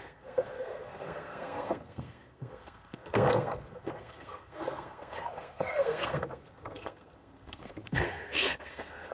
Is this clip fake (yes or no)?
yes